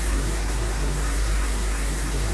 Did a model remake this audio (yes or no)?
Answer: yes